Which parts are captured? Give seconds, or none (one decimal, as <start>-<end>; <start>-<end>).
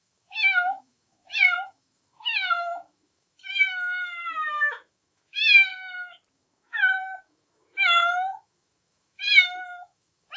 5.7-6.3